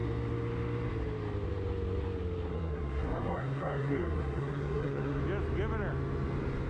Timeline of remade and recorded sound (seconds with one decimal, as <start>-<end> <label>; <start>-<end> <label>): 0.0-2.5 recorded; 2.5-5.2 remade; 5.2-6.7 recorded